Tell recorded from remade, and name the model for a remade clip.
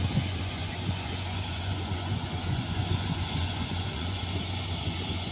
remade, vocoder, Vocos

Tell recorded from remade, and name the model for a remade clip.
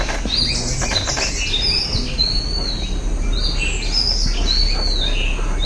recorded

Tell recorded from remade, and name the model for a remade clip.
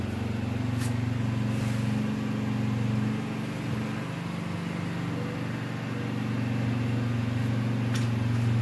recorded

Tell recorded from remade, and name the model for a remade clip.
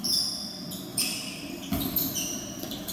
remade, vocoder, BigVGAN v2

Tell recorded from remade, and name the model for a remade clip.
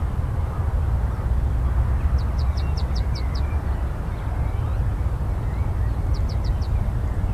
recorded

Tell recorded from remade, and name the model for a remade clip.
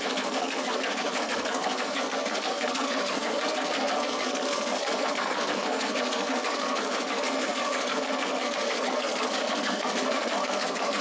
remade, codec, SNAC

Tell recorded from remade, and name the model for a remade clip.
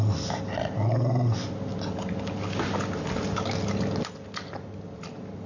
recorded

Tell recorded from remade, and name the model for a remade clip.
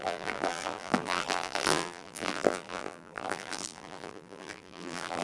remade, vocoder, BigVGAN v2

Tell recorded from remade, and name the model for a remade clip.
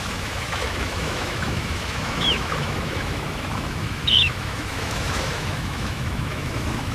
remade, autoencoder, DAC-VAE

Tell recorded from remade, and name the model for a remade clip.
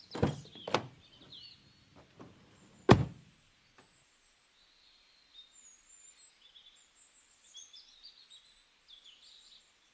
recorded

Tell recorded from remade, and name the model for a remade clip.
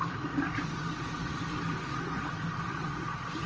remade, vocoder, BigVGAN v2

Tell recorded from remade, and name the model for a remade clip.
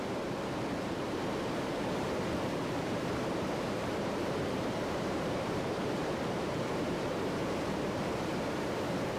remade, vocoder, BigVGAN v2